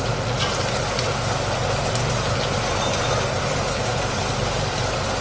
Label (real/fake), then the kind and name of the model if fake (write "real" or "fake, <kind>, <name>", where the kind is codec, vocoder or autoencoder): real